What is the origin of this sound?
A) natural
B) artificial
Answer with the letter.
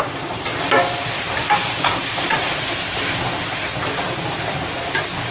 B